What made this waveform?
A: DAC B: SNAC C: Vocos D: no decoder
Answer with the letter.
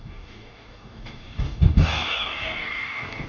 A